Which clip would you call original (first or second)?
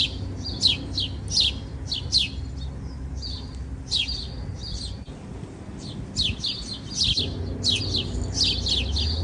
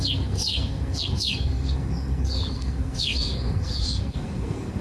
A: first